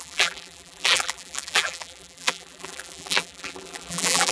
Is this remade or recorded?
remade